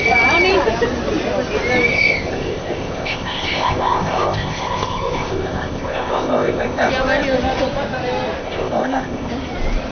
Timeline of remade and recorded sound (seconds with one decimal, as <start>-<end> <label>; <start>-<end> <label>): 0.0-1.9 recorded; 1.9-6.9 remade; 6.9-8.4 recorded; 8.4-9.3 remade; 9.3-9.9 recorded